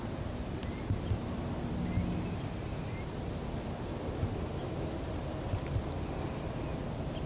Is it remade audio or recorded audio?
recorded